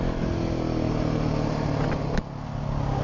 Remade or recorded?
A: recorded